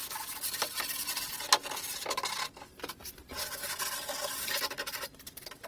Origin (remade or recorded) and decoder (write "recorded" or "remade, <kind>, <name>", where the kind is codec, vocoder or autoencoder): recorded